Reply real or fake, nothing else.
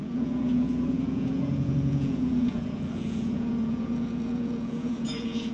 fake